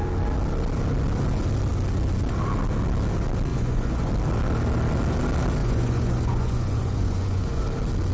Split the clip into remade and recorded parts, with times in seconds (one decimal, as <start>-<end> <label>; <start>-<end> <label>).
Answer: 0.0-3.5 recorded; 3.5-4.1 remade; 4.1-5.6 recorded; 5.6-7.6 remade; 7.6-8.1 recorded